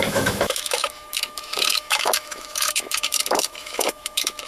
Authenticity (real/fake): fake